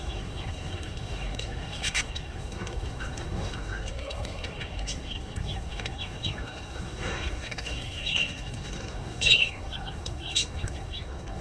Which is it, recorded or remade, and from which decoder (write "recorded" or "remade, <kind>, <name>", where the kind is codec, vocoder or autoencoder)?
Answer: remade, codec, SNAC